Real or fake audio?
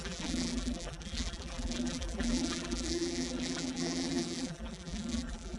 fake